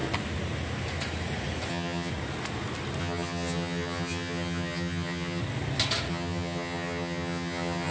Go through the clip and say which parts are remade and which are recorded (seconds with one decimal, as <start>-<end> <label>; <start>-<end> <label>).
0.0-1.7 recorded; 1.7-2.1 remade; 2.1-3.0 recorded; 3.0-5.4 remade; 5.4-6.1 recorded; 6.1-7.9 remade